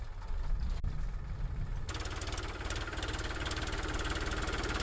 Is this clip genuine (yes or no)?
yes